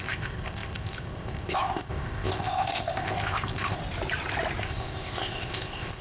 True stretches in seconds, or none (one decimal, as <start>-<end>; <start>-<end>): 3.8-4.6

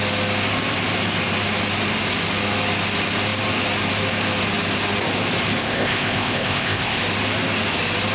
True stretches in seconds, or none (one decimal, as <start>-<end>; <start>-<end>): 0.0-5.6; 7.0-8.1

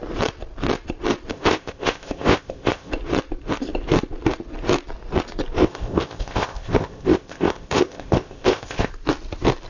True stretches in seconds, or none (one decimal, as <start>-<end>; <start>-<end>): 0.0-1.3; 2.9-5.6; 8.9-9.7

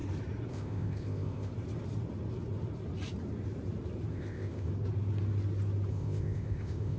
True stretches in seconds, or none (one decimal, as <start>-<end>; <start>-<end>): 0.0-0.5; 1.5-4.1; 4.7-5.9

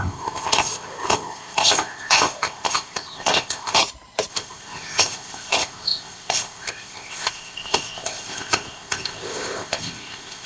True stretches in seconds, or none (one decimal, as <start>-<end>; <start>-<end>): 3.8-4.3

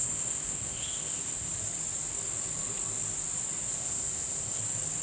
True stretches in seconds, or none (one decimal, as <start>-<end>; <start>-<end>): 1.5-3.7; 4.6-5.0

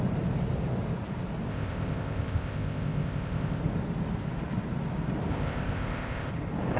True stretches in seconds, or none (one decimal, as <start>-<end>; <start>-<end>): 0.0-1.5; 3.6-5.3; 6.3-6.8

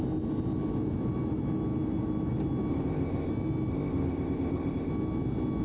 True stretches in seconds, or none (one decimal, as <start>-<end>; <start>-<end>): 0.0-2.7; 3.3-3.7; 4.9-5.6